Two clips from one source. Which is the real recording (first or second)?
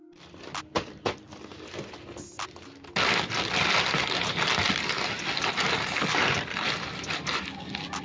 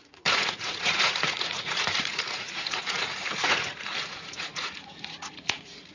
first